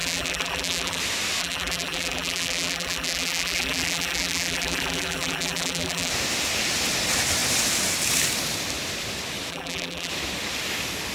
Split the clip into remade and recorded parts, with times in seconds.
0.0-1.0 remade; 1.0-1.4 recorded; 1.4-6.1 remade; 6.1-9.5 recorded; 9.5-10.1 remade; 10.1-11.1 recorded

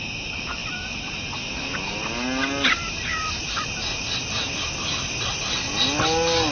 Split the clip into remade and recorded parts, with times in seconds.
0.0-6.5 recorded

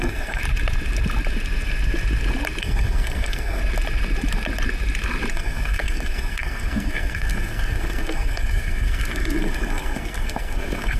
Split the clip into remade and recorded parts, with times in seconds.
0.0-0.4 remade; 0.4-2.6 recorded; 2.6-3.6 remade; 3.6-5.3 recorded; 5.3-11.0 remade

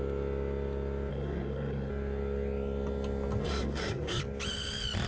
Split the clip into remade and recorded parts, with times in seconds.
0.0-1.1 recorded; 1.1-1.9 remade; 1.9-3.4 recorded; 3.4-4.2 remade; 4.2-5.1 recorded

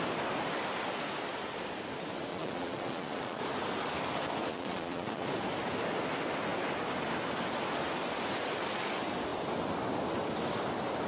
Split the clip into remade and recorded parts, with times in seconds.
0.0-2.3 recorded; 2.3-3.4 remade; 3.4-4.5 recorded; 4.5-5.3 remade; 5.3-11.1 recorded

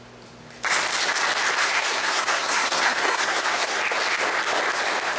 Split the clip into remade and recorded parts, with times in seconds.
0.0-1.6 recorded; 1.6-3.8 remade; 3.8-5.2 recorded